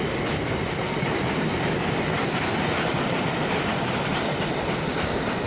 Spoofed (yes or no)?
no